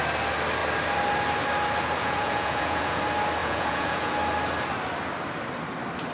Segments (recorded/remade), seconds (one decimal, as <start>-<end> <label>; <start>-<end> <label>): 0.0-2.0 recorded; 2.0-3.0 remade; 3.0-3.4 recorded; 3.4-4.1 remade; 4.1-6.1 recorded